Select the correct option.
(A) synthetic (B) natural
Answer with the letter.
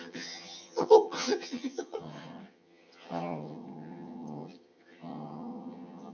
A